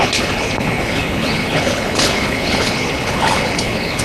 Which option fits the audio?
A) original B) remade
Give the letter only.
B